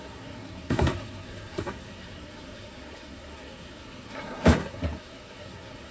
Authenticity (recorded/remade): remade